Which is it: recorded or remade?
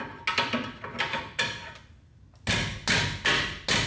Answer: recorded